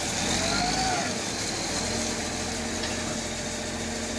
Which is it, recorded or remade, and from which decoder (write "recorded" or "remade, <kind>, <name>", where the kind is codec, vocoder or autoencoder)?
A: recorded